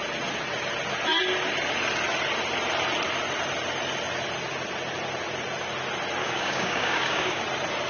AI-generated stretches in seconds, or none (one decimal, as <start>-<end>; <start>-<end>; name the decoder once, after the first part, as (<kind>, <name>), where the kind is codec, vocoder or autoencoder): 6.2-7.4 (codec, DAC)

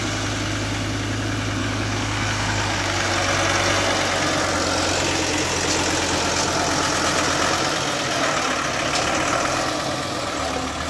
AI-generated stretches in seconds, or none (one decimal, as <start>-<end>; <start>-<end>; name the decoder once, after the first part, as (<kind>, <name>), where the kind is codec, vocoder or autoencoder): 1.6-3.1 (codec, DAC)